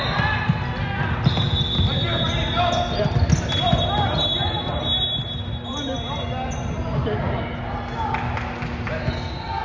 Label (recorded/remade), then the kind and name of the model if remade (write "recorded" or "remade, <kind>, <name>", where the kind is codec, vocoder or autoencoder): recorded